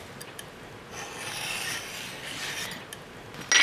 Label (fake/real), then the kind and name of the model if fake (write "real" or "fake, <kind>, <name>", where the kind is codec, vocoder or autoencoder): real